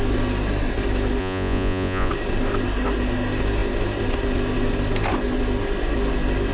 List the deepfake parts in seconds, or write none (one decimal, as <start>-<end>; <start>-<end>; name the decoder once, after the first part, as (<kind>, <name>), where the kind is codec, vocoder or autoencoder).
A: 1.2-2.1 (vocoder, Vocos)

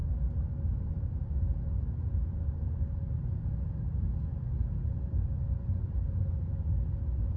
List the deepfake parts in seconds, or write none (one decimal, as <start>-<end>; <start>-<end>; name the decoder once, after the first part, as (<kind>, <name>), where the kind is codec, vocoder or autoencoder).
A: none

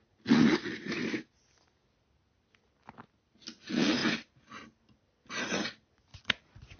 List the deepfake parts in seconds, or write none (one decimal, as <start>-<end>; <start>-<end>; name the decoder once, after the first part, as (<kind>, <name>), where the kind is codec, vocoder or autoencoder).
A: 0.0-1.0 (vocoder, Vocos); 3.6-4.0; 5.3-6.8

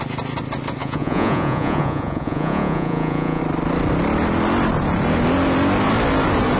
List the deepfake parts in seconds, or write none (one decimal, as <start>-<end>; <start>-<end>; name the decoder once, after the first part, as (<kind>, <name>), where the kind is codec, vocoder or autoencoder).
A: 0.8-3.4 (vocoder, Vocos)